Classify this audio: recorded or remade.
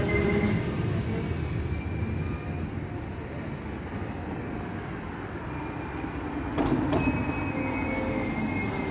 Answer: recorded